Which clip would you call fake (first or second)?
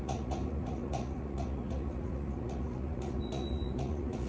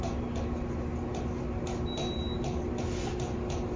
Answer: first